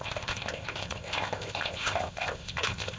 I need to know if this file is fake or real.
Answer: fake